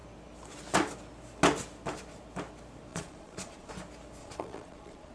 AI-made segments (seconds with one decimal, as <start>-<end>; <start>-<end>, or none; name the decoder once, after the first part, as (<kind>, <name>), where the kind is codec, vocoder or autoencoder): 2.9-3.7 (vocoder, Vocos); 4.2-5.1